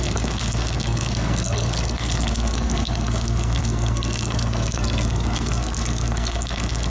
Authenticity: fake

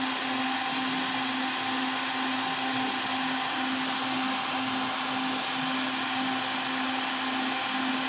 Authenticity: real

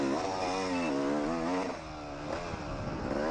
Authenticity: real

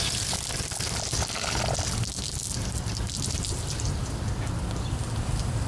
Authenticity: fake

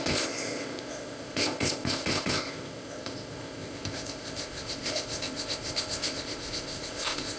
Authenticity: fake